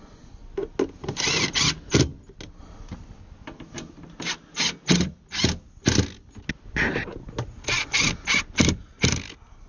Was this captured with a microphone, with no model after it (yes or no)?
yes